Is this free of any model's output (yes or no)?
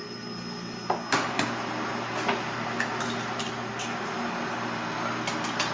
yes